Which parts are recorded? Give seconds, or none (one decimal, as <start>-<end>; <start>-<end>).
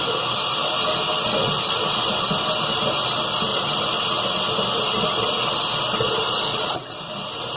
0.0-6.5; 7.0-7.6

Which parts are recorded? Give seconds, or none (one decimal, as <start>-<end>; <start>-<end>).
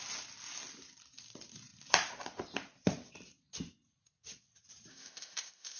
0.0-4.9